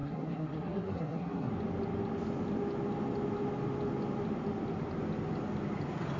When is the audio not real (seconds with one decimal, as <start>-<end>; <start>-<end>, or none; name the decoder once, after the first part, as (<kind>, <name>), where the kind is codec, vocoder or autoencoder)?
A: 0.0-1.5 (codec, SNAC)